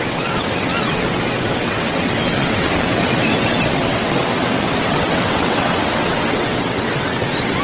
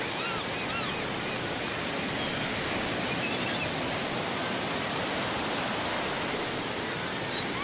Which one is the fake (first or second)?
first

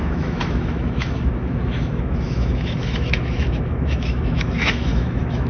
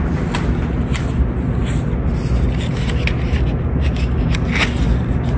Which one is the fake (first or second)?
first